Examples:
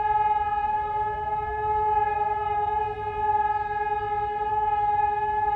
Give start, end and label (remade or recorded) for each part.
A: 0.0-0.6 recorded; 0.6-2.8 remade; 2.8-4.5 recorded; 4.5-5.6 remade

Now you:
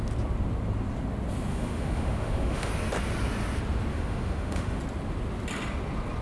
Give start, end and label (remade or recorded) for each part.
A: 0.0-1.5 recorded; 1.5-2.7 remade; 2.7-3.9 recorded; 3.9-4.8 remade; 4.8-6.2 recorded

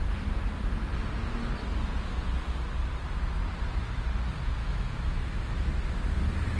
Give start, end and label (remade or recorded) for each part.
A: 0.0-4.6 recorded; 4.6-5.7 remade; 5.7-6.6 recorded

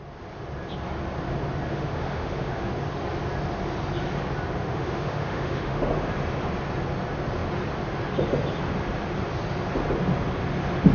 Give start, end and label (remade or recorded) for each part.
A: 0.0-1.7 recorded; 1.7-2.7 remade; 2.7-4.6 recorded; 4.6-5.9 remade; 5.9-10.9 recorded

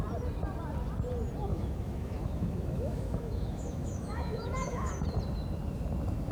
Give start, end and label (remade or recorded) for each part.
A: 0.0-1.5 recorded; 1.5-4.9 remade; 4.9-6.3 recorded

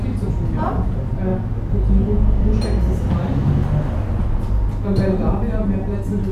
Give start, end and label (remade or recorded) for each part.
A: 0.0-6.3 recorded

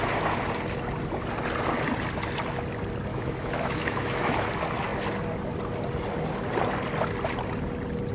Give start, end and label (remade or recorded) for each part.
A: 0.0-3.1 recorded; 3.1-4.5 remade; 4.5-8.1 recorded

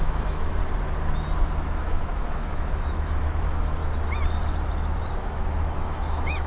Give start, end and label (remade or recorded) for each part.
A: 0.0-0.6 remade; 0.6-1.8 recorded; 1.8-3.8 remade; 3.8-5.2 recorded; 5.2-6.5 remade